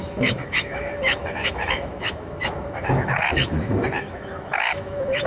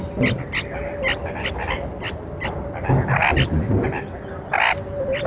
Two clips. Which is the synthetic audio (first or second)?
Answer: first